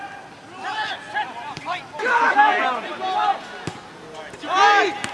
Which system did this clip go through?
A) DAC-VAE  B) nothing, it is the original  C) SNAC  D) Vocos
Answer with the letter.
B